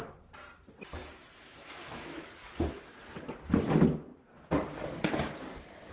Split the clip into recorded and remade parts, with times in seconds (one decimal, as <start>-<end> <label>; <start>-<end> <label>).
0.0-1.0 recorded; 1.0-2.2 remade; 2.2-5.9 recorded